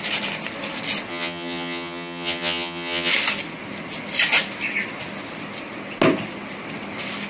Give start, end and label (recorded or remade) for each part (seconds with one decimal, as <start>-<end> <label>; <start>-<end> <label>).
0.0-1.1 recorded; 1.1-3.1 remade; 3.1-7.3 recorded